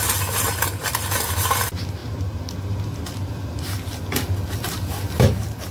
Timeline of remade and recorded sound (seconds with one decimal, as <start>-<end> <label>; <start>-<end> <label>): 0.0-5.7 recorded